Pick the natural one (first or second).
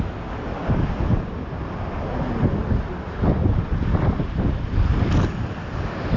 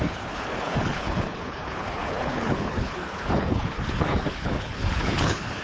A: first